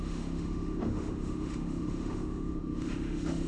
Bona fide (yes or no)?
no